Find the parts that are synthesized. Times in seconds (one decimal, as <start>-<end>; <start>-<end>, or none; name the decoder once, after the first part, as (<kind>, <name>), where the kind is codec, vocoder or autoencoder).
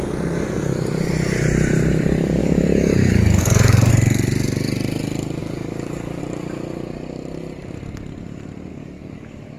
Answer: 2.4-3.9 (codec, DAC); 5.4-6.2; 8.7-9.6